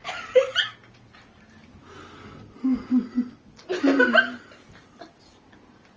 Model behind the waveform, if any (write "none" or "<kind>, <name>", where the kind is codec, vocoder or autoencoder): none